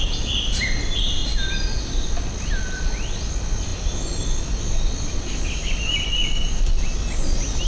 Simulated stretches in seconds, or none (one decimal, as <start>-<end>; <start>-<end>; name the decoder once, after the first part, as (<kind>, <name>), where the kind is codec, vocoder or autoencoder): none